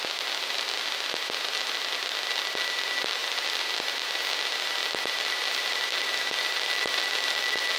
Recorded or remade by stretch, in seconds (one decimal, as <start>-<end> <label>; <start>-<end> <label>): 0.0-3.2 recorded; 3.2-3.7 remade; 3.7-5.4 recorded; 5.4-7.0 remade; 7.0-7.8 recorded